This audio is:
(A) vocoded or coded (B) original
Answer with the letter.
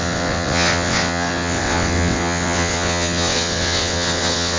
A